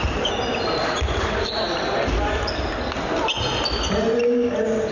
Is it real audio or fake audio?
real